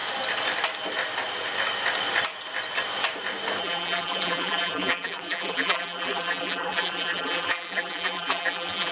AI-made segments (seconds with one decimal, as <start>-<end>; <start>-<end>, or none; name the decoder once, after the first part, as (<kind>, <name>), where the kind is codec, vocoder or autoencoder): 3.6-8.9 (vocoder, BigVGAN v2)